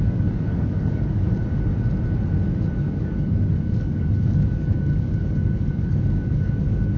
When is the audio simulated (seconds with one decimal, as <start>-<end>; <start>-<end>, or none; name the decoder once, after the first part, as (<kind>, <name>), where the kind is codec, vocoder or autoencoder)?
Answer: 0.0-1.4 (codec, DAC); 2.8-7.0